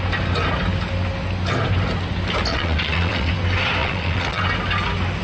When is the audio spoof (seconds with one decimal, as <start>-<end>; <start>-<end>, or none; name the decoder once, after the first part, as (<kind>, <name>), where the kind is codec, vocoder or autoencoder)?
2.5-3.3 (vocoder, WaveNeXt); 3.8-4.4